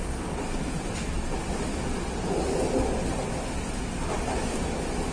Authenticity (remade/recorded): recorded